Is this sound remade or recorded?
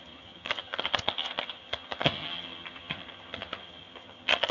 remade